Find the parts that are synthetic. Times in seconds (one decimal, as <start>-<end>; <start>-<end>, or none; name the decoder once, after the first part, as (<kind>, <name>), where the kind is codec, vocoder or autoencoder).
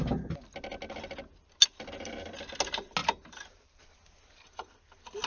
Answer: 3.0-3.8 (vocoder, BigVGAN v2)